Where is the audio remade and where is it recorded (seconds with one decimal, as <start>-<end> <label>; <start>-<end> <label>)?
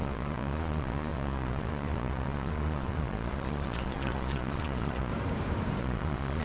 0.0-5.1 remade; 5.1-5.8 recorded; 5.8-6.4 remade